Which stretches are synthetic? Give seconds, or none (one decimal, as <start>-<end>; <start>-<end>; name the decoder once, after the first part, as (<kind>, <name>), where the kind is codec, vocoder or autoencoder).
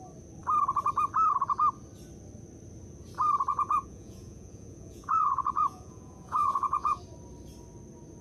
3.5-7.0 (vocoder, Vocos)